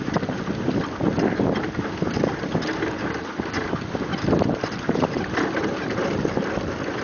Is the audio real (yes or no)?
yes